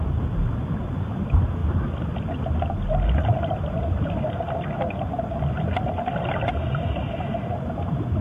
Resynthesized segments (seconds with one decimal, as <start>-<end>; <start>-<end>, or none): none